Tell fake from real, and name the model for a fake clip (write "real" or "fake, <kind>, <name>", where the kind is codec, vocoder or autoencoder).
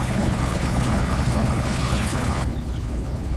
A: fake, codec, HILCodec